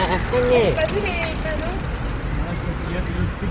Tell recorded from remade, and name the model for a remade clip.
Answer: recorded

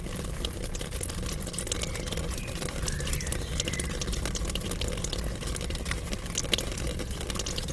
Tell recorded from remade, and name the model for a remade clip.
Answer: recorded